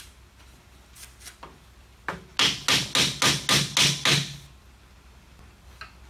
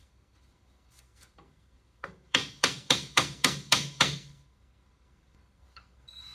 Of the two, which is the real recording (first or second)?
first